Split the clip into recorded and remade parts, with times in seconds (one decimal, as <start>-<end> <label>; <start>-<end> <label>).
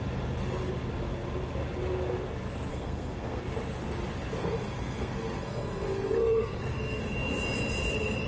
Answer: 0.0-2.7 recorded; 2.7-3.4 remade; 3.4-4.4 recorded; 4.4-7.0 remade; 7.0-8.3 recorded